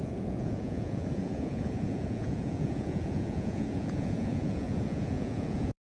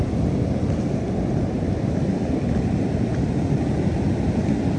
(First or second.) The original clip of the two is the second